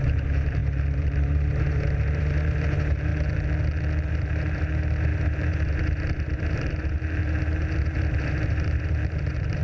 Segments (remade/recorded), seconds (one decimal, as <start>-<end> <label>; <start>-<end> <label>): 0.0-3.1 remade; 3.1-4.1 recorded; 4.1-9.6 remade